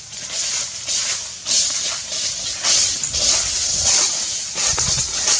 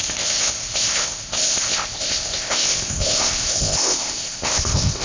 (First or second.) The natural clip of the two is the first